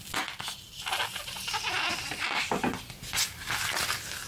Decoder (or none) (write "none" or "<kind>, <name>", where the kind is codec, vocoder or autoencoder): none